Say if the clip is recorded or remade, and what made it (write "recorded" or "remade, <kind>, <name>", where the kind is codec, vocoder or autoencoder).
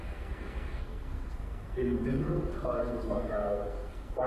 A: remade, codec, SNAC